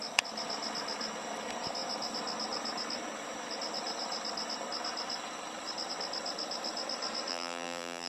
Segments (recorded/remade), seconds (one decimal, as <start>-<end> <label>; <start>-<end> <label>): 0.0-7.3 recorded; 7.3-8.1 remade